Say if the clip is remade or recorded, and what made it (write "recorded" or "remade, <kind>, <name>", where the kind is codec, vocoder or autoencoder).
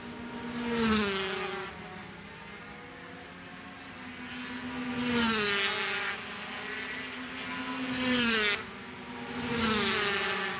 recorded